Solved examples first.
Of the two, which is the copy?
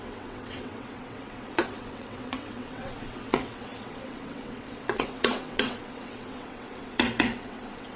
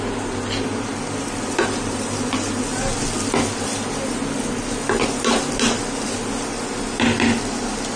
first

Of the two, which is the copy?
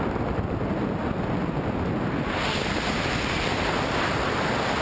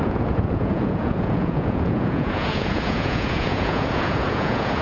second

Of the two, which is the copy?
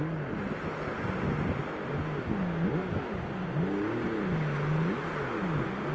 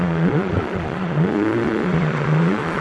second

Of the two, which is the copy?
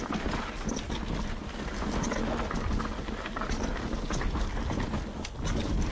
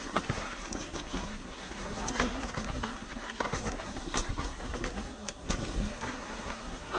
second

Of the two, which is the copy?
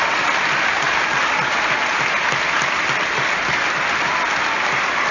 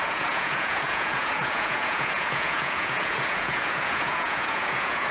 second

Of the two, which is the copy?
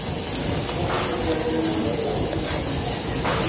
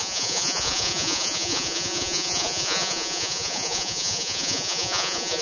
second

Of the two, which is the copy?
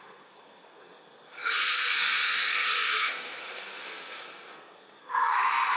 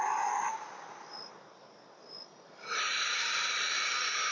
first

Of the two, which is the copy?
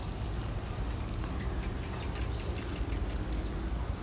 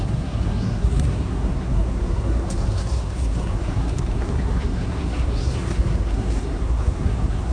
second